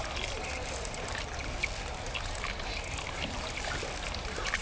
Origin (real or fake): real